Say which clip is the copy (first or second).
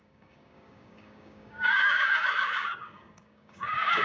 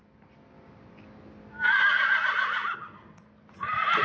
first